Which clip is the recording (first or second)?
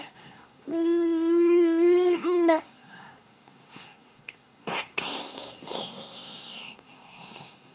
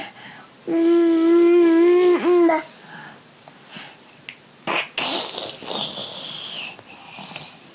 second